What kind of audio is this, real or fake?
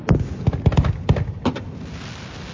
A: real